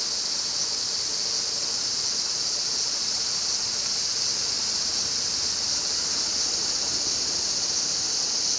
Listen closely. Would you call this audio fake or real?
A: real